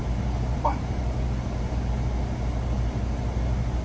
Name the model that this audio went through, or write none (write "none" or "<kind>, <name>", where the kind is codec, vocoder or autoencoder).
none